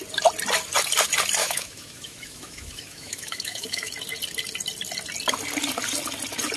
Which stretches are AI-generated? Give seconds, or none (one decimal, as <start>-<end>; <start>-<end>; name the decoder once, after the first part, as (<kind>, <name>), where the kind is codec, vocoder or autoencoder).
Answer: 1.4-3.9 (autoencoder, DAC-VAE)